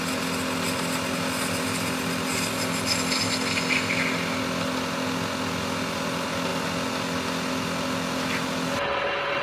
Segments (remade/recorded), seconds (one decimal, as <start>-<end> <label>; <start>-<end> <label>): 0.0-9.4 recorded